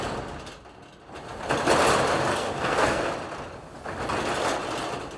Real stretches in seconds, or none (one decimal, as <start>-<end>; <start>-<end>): 0.0-2.3; 3.1-5.2

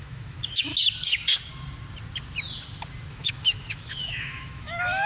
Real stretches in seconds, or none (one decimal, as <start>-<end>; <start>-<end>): 0.7-3.1

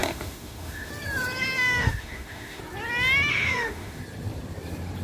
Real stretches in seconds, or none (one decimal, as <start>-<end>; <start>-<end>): 0.9-1.8; 2.6-3.3; 4.0-5.0

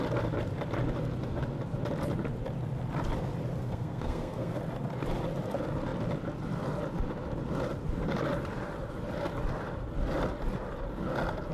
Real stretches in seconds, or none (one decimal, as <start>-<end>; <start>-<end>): 0.0-3.6; 4.6-11.5